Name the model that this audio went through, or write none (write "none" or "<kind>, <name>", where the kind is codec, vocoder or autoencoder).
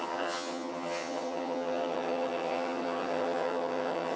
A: vocoder, HiFi-GAN